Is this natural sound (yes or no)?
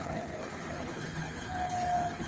no